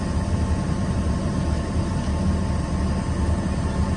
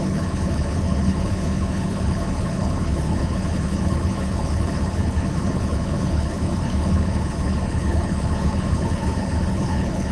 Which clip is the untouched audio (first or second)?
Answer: first